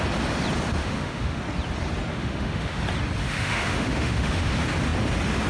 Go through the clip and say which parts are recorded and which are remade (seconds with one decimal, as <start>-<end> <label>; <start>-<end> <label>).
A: 0.0-0.8 recorded; 0.8-1.4 remade; 1.4-2.1 recorded; 2.1-2.8 remade; 2.8-3.2 recorded; 3.2-4.5 remade; 4.5-5.5 recorded